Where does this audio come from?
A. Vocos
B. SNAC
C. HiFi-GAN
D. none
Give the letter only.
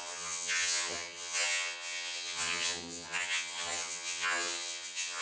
C